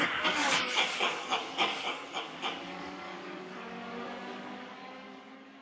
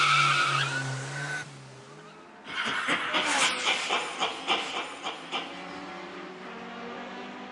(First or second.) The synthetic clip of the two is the first